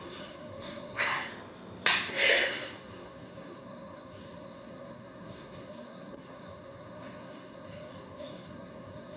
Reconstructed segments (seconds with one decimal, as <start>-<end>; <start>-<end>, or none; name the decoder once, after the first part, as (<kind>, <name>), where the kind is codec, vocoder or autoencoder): 0.0-1.3 (codec, SNAC); 2.1-9.2